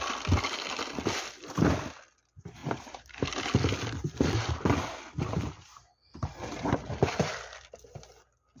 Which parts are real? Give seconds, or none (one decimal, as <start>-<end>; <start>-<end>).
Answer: 0.0-2.6; 3.3-8.6